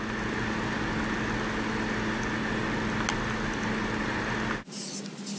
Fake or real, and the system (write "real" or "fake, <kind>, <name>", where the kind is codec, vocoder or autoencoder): real